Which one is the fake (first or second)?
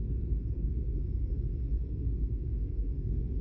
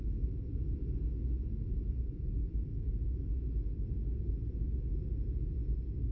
first